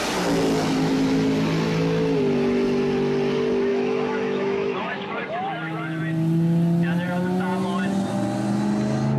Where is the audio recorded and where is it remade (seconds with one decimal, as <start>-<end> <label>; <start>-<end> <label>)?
0.0-3.7 recorded; 3.7-6.0 remade; 6.0-9.2 recorded